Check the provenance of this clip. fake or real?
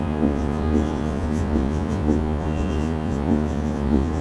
fake